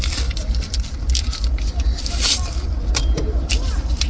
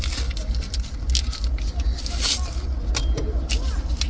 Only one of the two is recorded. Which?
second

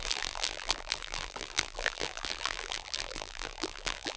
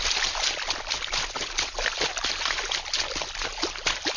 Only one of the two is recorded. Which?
second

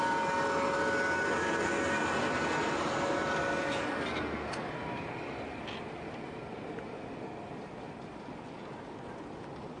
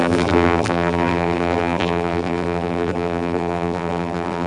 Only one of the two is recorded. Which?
first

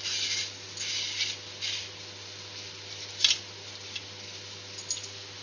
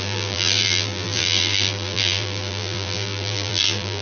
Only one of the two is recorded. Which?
first